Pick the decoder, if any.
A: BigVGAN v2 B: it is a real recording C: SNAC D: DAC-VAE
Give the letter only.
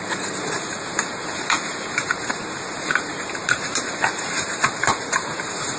A